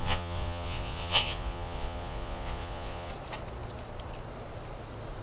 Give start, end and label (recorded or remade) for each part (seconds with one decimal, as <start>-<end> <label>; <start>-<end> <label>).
0.0-3.1 remade; 3.1-5.2 recorded